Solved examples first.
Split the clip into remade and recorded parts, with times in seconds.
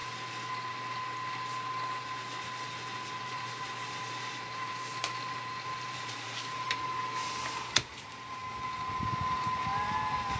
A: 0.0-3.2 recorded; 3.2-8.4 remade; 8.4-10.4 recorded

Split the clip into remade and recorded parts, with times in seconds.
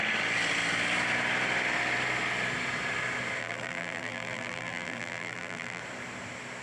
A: 0.0-3.4 recorded; 3.4-5.8 remade; 5.8-6.6 recorded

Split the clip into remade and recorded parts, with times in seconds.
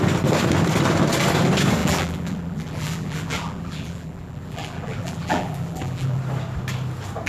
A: 0.0-1.8 recorded; 1.8-6.2 remade; 6.2-7.3 recorded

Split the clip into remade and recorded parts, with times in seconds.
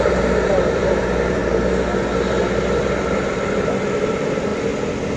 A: 0.0-1.4 remade; 1.4-4.1 recorded; 4.1-4.5 remade; 4.5-5.2 recorded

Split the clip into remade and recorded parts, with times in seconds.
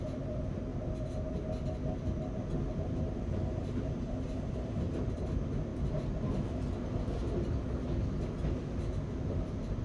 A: 0.0-0.7 remade; 0.7-2.7 recorded; 2.7-5.7 remade; 5.7-9.2 recorded; 9.2-9.8 remade